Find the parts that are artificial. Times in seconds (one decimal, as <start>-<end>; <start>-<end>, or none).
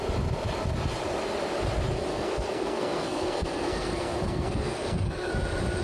2.1-5.3